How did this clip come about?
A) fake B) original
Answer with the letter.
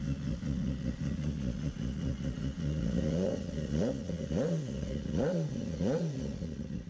A